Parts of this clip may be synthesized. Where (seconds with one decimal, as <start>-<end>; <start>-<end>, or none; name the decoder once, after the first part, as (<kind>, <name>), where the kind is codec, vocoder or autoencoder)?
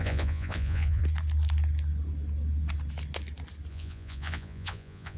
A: 0.0-1.0 (vocoder, Vocos); 3.7-5.2